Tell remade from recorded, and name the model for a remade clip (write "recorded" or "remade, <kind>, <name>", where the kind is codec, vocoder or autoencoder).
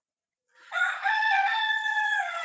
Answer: remade, vocoder, Vocos